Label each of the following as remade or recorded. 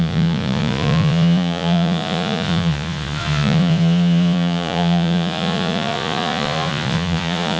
remade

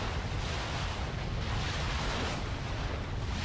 recorded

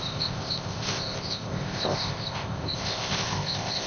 remade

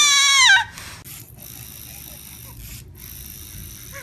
recorded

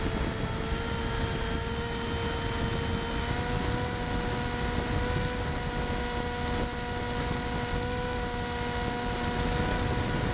recorded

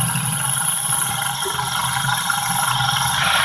recorded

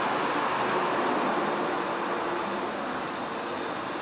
recorded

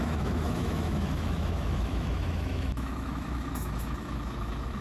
remade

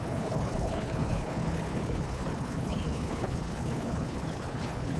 remade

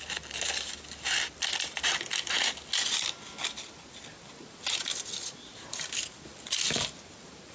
recorded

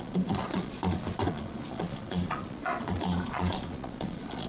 remade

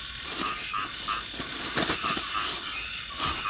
recorded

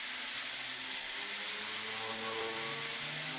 recorded